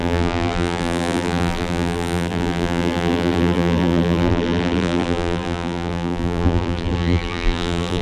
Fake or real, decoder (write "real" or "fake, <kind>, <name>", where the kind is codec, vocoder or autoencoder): fake, vocoder, BigVGAN v2